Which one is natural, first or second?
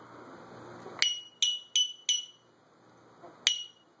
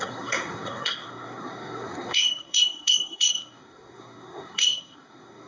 first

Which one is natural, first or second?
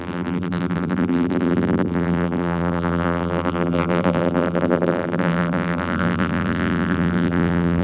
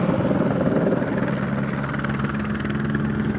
second